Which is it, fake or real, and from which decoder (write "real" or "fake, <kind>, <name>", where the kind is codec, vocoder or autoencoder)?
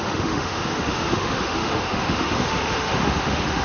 fake, autoencoder, DAC-VAE